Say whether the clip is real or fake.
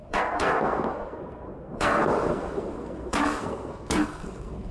fake